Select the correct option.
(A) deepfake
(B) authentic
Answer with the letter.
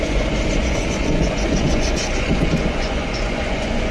A